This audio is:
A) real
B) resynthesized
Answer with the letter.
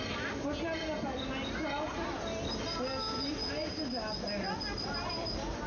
A